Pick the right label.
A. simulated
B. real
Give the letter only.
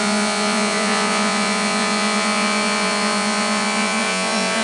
A